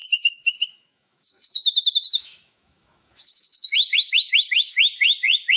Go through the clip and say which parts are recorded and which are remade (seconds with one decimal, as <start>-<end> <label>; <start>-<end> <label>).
0.0-4.9 remade; 4.9-5.6 recorded